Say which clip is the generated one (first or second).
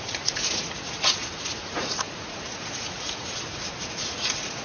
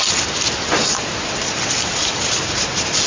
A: first